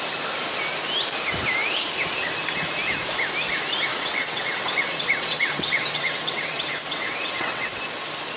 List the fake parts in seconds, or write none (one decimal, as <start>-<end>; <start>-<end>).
3.9-7.7